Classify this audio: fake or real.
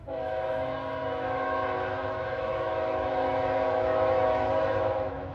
fake